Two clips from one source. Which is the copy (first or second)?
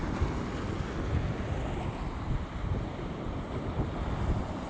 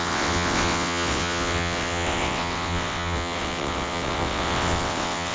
second